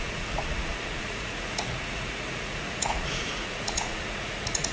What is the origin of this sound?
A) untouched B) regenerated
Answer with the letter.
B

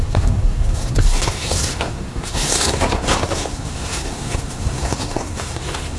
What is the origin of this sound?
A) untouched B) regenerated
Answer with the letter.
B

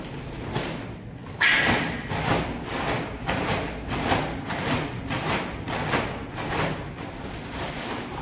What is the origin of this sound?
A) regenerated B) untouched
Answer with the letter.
B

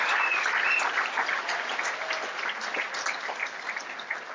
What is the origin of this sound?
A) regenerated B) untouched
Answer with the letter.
B